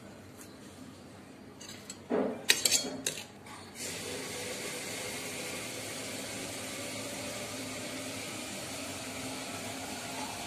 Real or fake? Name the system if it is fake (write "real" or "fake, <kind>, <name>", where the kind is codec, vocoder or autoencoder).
real